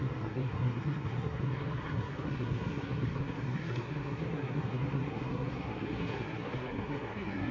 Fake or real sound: fake